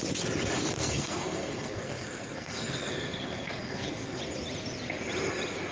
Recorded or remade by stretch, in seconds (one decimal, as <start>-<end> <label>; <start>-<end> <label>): 0.0-0.8 recorded; 0.8-4.2 remade; 4.2-5.7 recorded